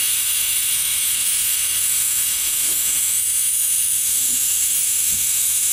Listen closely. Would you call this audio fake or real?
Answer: fake